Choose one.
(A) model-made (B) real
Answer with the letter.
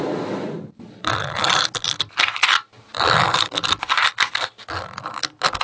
B